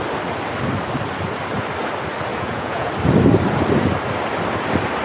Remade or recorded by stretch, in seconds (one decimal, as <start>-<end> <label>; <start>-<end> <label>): 0.0-2.3 recorded; 2.3-2.9 remade; 2.9-5.0 recorded